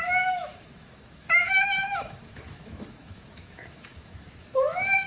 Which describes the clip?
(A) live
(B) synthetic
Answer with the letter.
B